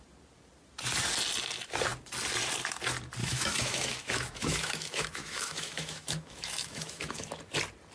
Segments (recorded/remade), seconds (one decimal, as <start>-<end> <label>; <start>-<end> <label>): 0.0-3.2 recorded; 3.2-7.4 remade; 7.4-7.9 recorded